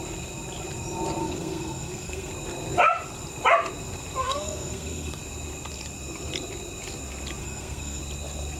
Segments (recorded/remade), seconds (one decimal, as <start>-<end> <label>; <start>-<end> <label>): 0.0-1.2 recorded; 1.2-2.3 remade; 2.3-4.2 recorded; 4.2-5.2 remade; 5.2-7.4 recorded; 7.4-8.0 remade; 8.0-8.6 recorded